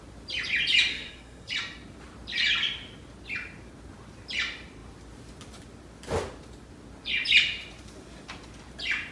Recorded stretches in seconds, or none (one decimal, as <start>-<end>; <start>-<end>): 0.0-0.9; 1.5-9.1